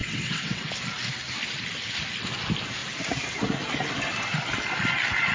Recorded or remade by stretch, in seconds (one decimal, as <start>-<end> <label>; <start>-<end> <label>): 0.0-0.7 remade; 0.7-5.3 recorded